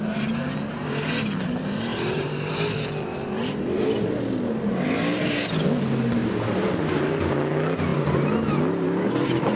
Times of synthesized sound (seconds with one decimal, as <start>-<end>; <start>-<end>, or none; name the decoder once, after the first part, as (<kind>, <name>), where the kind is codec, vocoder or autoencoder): none